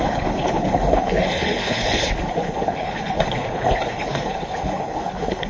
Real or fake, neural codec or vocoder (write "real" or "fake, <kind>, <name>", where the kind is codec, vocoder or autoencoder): fake, codec, HILCodec